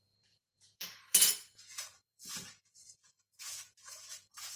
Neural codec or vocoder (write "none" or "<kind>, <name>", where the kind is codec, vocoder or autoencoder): vocoder, Vocos